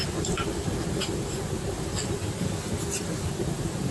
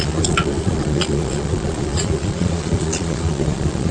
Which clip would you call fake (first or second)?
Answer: second